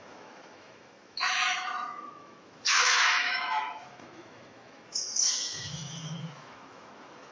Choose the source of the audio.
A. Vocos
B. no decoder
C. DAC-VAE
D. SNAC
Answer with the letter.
C